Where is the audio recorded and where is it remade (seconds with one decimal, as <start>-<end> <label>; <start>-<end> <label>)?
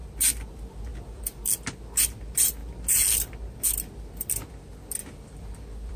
0.0-0.9 recorded; 0.9-1.4 remade; 1.4-5.0 recorded; 5.0-6.0 remade